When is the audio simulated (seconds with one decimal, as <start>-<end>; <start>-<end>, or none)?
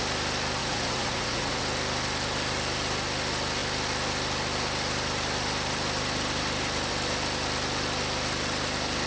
0.6-1.6